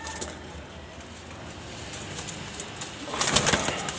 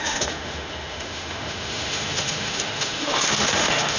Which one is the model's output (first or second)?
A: second